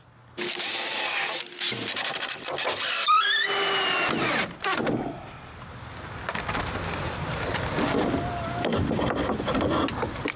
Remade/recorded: recorded